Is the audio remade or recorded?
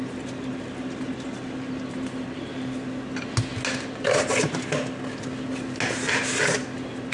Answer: recorded